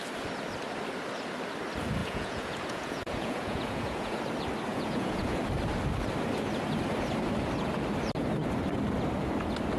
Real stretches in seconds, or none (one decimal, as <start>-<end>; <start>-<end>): 0.0-2.0; 4.2-4.7; 5.4-9.8